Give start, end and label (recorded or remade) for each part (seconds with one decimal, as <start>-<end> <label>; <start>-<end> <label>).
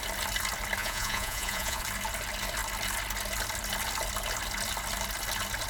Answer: 0.0-0.8 recorded; 0.8-1.8 remade; 1.8-5.7 recorded